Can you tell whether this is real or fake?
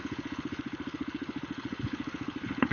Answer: fake